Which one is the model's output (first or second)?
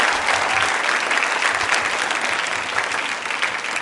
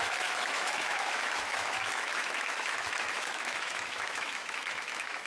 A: second